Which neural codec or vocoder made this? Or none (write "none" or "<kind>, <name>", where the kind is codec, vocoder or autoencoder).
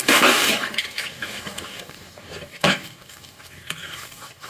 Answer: codec, DAC